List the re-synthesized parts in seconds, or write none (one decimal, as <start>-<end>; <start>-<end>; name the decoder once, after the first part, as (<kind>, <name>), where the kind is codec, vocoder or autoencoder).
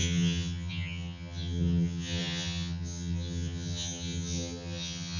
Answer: 0.0-5.2 (vocoder, HiFi-GAN)